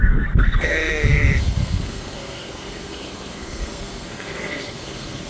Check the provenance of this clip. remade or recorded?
remade